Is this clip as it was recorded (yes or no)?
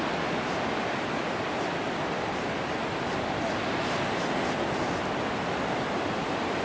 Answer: yes